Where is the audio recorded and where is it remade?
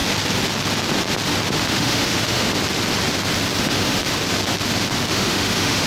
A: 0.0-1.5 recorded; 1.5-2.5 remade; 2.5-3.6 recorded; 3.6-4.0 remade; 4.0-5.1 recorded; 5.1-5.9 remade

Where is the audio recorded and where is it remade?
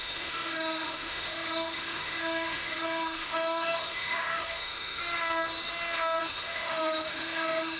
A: 0.0-5.0 remade; 5.0-6.2 recorded; 6.2-7.8 remade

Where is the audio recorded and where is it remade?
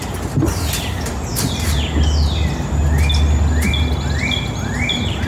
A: 0.0-5.3 recorded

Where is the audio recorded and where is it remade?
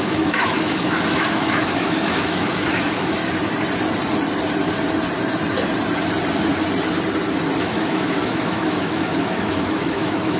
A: 0.0-3.2 remade; 3.2-7.6 recorded; 7.6-10.4 remade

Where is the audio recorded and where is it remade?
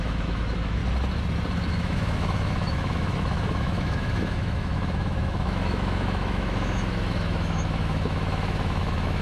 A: 0.0-0.8 remade; 0.8-1.7 recorded; 1.7-9.2 remade